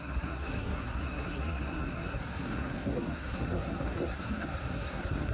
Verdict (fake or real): fake